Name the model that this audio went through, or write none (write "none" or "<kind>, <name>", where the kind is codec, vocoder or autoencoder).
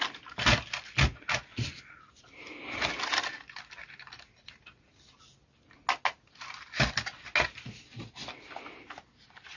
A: none